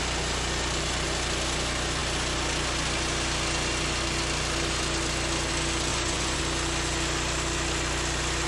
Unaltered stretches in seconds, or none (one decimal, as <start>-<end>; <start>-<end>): 0.0-5.9; 6.4-8.5